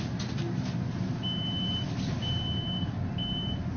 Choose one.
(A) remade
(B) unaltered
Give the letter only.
B